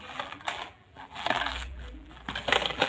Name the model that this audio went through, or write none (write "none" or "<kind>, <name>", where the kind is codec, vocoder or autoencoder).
vocoder, BigVGAN v2